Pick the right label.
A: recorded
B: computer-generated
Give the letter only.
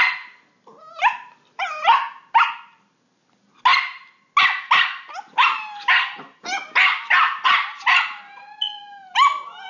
A